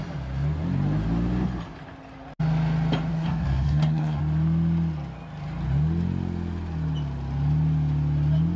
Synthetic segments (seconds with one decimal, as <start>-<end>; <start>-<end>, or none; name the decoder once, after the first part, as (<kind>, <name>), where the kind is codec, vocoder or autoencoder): 3.1-4.2 (codec, SNAC)